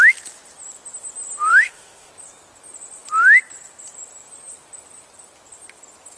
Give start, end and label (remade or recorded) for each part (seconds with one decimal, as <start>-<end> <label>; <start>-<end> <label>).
0.0-1.5 recorded; 1.5-2.1 remade; 2.1-6.2 recorded